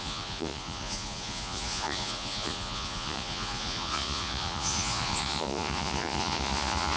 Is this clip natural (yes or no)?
no